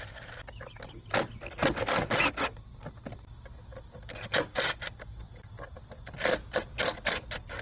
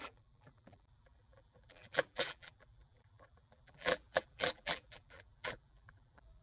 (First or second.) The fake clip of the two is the second